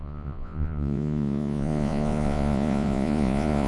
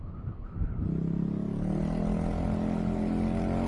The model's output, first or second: first